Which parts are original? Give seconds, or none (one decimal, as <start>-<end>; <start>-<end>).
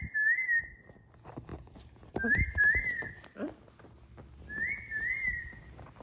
0.0-1.5; 3.9-4.9; 5.4-6.0